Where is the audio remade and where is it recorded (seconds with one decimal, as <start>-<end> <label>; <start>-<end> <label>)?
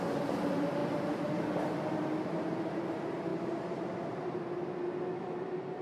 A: 0.0-5.8 recorded